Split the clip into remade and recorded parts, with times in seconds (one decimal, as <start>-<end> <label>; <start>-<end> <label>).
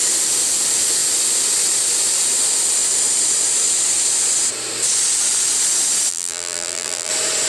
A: 0.0-6.1 recorded; 6.1-7.1 remade; 7.1-7.5 recorded